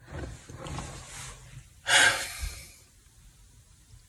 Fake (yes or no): no